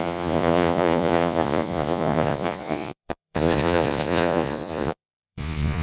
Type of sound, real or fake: fake